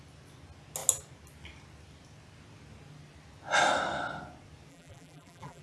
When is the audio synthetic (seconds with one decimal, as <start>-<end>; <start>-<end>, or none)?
4.7-5.6